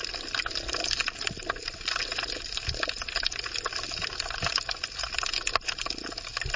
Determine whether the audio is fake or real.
real